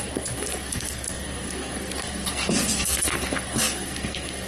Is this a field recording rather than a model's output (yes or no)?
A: no